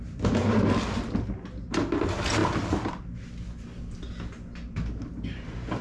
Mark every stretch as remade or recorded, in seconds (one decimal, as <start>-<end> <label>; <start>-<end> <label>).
0.0-5.8 recorded